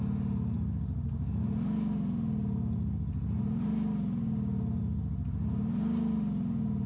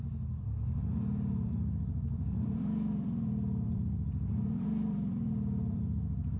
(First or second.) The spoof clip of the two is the second